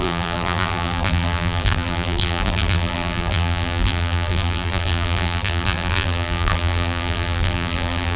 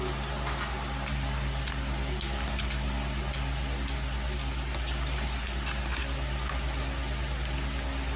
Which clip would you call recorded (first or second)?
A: second